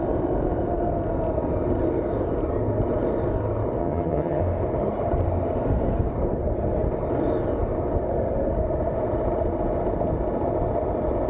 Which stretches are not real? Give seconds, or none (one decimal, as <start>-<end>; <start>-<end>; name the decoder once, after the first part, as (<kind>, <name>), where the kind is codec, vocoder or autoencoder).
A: 3.8-4.4 (vocoder, HiFi-GAN)